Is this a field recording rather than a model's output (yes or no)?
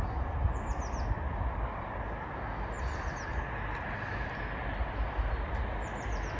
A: yes